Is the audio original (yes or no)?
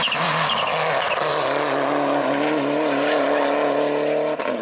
yes